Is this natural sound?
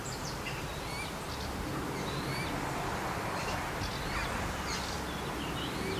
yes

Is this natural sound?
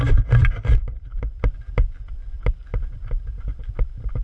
yes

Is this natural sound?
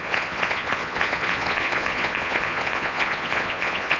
no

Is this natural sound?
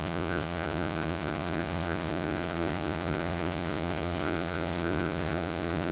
no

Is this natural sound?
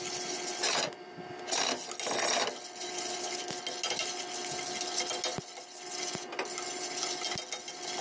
yes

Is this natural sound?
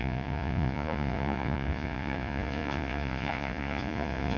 no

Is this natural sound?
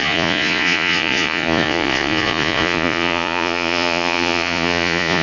no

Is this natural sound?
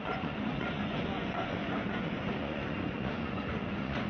no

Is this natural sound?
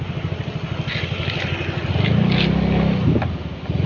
yes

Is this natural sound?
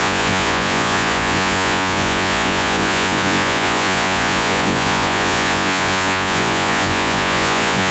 no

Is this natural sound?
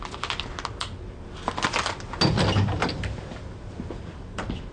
yes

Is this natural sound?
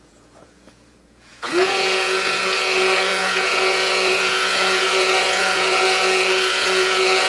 no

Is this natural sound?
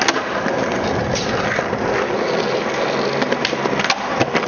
yes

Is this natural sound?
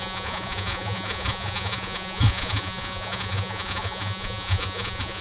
no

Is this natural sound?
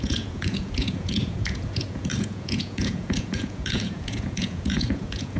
no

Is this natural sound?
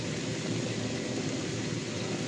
yes